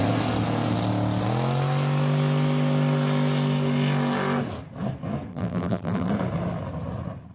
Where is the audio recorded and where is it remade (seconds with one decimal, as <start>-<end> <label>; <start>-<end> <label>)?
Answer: 0.0-5.3 recorded; 5.3-6.1 remade; 6.1-7.3 recorded